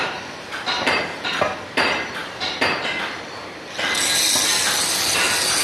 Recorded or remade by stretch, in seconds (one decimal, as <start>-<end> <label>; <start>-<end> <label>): 0.0-1.0 remade; 1.0-5.6 recorded